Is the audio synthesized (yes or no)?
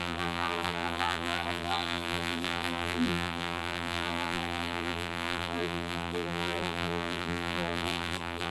yes